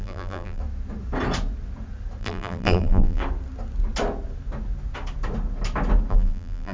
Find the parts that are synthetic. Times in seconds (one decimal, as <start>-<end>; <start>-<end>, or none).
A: 0.0-0.6; 2.2-3.2; 6.1-6.7